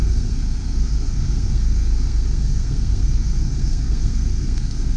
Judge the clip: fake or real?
fake